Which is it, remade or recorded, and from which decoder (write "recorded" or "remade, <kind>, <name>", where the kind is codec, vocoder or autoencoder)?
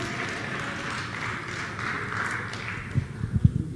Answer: recorded